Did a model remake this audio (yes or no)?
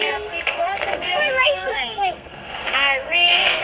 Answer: yes